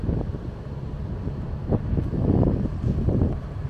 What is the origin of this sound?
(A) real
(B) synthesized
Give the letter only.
B